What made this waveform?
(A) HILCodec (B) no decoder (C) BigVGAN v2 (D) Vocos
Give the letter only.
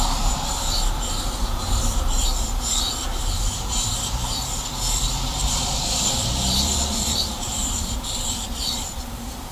C